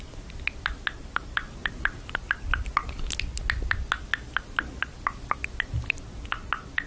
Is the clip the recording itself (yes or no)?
yes